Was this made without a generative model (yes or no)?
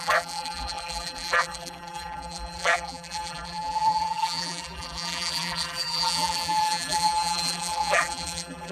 no